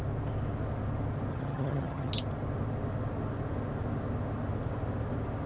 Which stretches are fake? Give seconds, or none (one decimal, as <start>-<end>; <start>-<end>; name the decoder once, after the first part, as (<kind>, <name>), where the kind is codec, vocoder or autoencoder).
1.3-2.1 (vocoder, HiFi-GAN)